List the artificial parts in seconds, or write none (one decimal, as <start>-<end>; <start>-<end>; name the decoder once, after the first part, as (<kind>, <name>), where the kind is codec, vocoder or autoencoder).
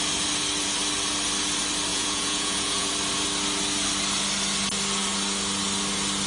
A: 1.9-2.9 (vocoder, Vocos)